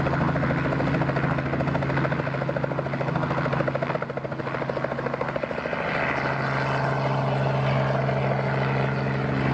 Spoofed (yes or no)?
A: no